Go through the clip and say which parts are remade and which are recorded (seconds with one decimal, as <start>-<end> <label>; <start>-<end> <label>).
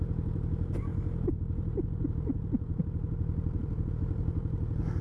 0.0-0.9 recorded; 0.9-3.9 remade; 3.9-5.0 recorded